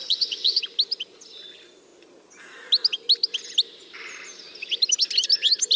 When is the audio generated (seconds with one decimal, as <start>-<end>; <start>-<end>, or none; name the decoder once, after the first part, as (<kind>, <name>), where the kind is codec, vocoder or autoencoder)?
0.0-0.6 (vocoder, WaveNeXt)